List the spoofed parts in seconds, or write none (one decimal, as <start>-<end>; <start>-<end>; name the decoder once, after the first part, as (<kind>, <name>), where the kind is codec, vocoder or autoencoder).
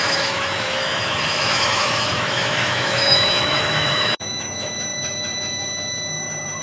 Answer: 0.0-6.6 (autoencoder, DAC-VAE)